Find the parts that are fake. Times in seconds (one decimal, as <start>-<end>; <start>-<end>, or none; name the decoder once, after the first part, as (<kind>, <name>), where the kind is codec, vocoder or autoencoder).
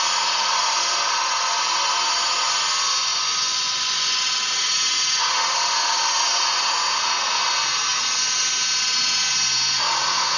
3.1-4.2 (vocoder, Vocos)